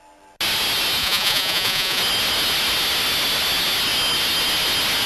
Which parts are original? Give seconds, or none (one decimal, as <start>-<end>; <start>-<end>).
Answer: 0.0-1.0; 2.0-5.1